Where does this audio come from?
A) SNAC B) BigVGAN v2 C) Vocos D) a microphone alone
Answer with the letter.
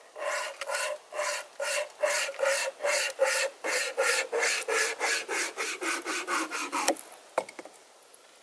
D